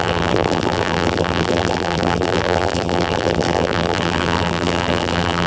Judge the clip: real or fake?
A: fake